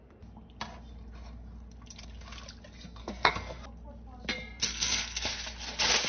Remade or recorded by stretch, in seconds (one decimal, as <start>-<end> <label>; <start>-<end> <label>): 0.0-3.0 recorded; 3.0-3.6 remade; 3.6-4.7 recorded; 4.7-5.3 remade; 5.3-6.1 recorded